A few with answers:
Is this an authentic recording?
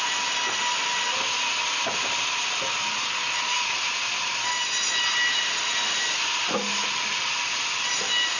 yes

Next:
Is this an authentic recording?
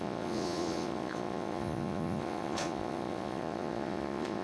no